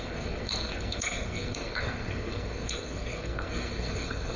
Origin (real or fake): fake